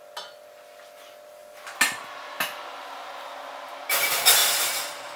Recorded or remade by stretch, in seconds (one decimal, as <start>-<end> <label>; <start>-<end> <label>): 0.0-4.4 recorded; 4.4-5.2 remade